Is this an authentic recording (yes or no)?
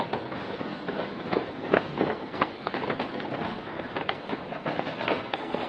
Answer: no